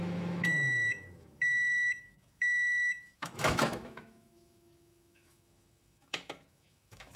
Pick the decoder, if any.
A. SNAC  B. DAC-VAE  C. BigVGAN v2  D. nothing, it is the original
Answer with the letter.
B